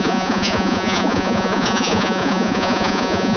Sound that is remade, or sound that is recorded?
remade